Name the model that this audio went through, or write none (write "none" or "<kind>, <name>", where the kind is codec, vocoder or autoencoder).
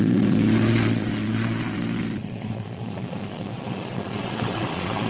vocoder, Vocos